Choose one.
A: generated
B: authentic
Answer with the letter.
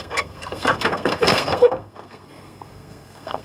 A